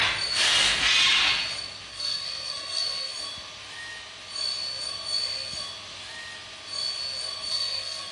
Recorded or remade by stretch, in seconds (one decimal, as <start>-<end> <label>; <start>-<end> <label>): 0.0-1.9 recorded; 1.9-3.1 remade; 3.1-7.5 recorded; 7.5-8.1 remade